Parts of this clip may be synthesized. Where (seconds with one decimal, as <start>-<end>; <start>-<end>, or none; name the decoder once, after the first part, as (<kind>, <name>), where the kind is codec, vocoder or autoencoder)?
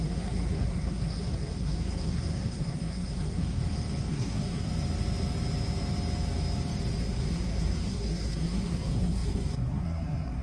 0.0-3.6 (codec, SNAC); 4.1-4.7; 7.0-10.4